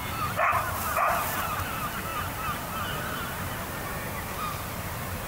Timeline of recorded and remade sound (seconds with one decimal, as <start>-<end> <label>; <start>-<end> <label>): 0.0-0.5 remade; 0.5-1.0 recorded; 1.0-2.1 remade; 2.1-4.3 recorded; 4.3-5.3 remade